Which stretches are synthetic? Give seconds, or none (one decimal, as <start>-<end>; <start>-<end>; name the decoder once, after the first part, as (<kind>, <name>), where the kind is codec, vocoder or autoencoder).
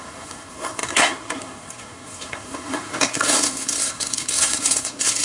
0.0-5.2 (codec, SNAC)